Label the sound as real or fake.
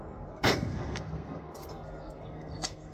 fake